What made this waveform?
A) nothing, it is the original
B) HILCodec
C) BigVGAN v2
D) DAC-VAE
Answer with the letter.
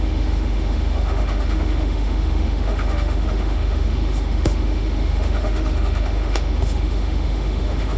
D